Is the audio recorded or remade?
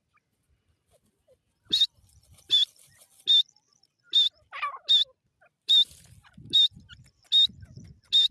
recorded